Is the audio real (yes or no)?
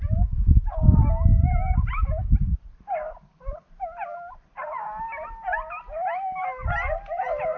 yes